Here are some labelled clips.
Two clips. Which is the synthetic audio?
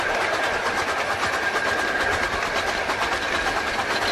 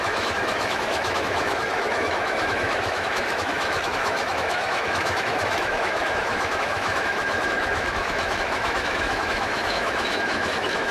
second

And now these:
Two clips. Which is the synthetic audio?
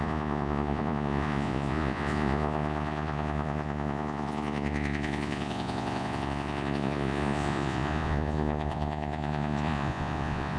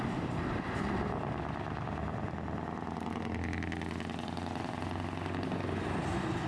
first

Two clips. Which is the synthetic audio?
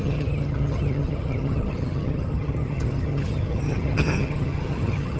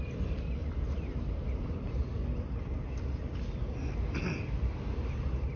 first